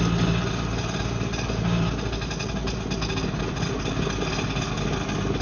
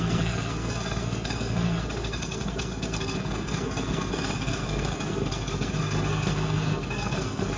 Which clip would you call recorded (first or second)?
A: first